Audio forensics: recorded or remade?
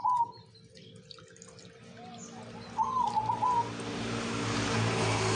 recorded